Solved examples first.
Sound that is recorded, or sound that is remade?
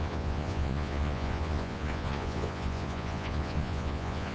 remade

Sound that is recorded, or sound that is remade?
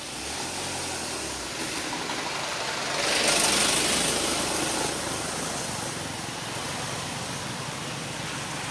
recorded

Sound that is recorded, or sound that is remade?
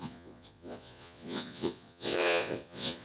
remade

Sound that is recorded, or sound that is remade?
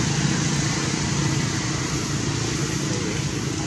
recorded